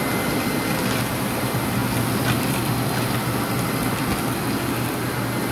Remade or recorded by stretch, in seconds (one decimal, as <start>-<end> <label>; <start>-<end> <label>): 0.0-5.5 recorded